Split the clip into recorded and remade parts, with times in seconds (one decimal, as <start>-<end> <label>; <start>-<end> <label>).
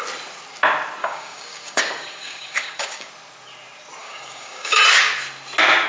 0.0-1.0 recorded; 1.0-3.1 remade; 3.1-4.0 recorded; 4.0-4.8 remade; 4.8-5.9 recorded